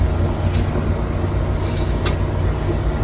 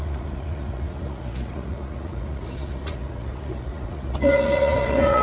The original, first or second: first